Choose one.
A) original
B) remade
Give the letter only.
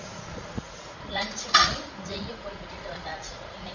B